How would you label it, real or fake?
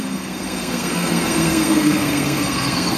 fake